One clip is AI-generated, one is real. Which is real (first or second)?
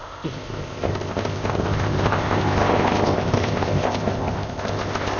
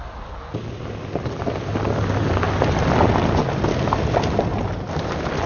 second